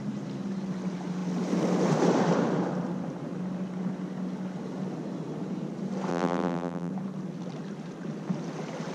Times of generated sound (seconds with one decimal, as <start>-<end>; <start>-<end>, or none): 6.1-6.9